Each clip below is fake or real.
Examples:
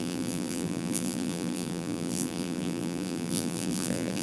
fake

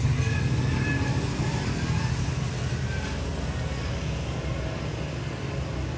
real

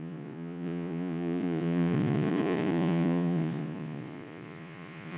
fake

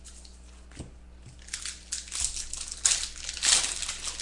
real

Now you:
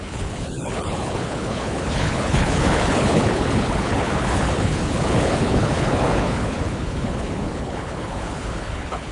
fake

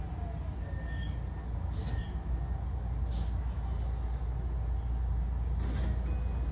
real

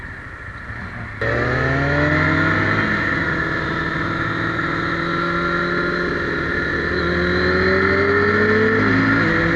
real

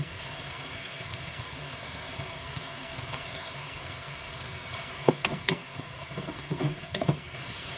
fake